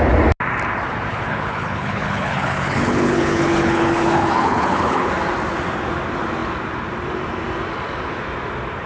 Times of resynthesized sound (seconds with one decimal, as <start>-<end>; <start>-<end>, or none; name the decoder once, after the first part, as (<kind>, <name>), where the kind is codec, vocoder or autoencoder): 1.1-5.1 (codec, HILCodec)